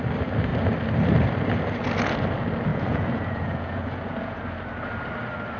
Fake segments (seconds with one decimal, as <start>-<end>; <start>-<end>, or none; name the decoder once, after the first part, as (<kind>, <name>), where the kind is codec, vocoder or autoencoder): 2.7-4.4 (vocoder, Vocos)